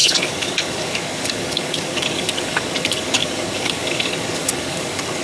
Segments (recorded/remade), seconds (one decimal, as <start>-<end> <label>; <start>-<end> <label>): 0.0-5.2 remade

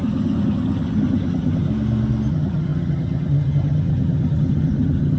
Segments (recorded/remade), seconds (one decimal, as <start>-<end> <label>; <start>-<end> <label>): 0.0-1.7 remade; 1.7-2.3 recorded; 2.3-5.2 remade

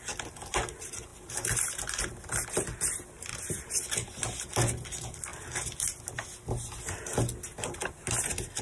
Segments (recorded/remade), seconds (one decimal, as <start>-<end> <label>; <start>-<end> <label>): 0.0-1.1 recorded; 1.1-2.1 remade; 2.1-8.6 recorded